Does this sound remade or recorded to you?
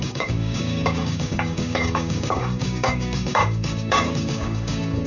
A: remade